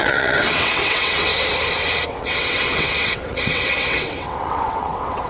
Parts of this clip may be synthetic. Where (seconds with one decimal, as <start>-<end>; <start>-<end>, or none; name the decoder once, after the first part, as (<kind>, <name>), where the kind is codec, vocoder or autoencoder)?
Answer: 0.0-1.3 (vocoder, WaveNeXt); 2.1-5.3